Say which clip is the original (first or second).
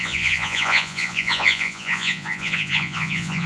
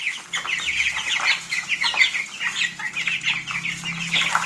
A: second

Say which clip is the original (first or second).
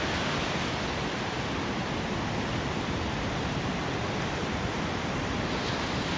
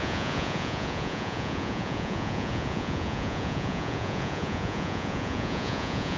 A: first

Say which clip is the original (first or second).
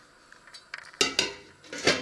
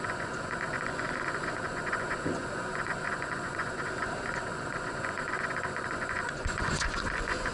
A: first